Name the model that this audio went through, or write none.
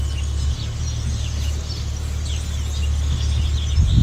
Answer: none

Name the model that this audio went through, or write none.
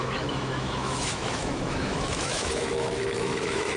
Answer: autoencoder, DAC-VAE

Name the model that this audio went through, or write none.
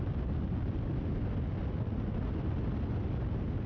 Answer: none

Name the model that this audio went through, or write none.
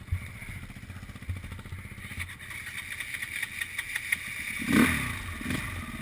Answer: none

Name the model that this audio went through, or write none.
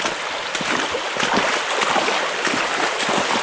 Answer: none